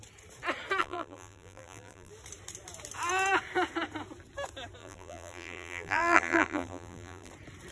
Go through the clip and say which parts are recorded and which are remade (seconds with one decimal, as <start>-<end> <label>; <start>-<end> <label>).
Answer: 0.0-0.8 recorded; 0.8-2.1 remade; 2.1-4.8 recorded; 4.8-7.3 remade; 7.3-7.7 recorded

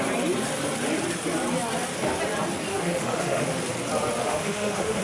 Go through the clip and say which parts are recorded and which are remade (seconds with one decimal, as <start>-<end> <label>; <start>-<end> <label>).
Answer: 0.0-2.7 recorded; 2.7-3.6 remade; 3.6-4.2 recorded; 4.2-5.0 remade

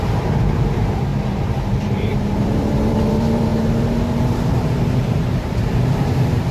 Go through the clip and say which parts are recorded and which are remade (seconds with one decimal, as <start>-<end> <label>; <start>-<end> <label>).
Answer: 0.0-6.5 remade